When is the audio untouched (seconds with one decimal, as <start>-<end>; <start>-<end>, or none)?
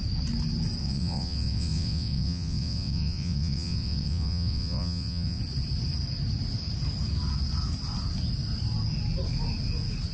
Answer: 0.0-0.8; 5.4-10.1